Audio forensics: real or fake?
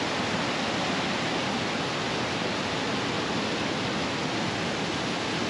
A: real